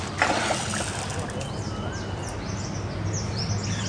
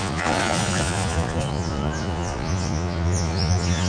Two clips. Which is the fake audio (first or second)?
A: second